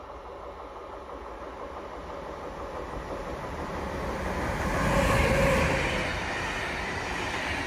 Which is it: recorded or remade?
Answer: recorded